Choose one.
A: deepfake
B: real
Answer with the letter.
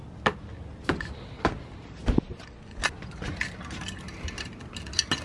B